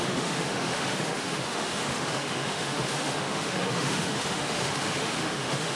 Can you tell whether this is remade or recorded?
remade